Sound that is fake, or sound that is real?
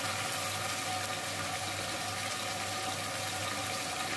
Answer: real